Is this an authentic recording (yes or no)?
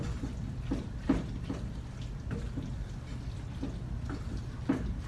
yes